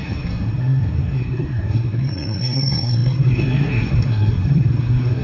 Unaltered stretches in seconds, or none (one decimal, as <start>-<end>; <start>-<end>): none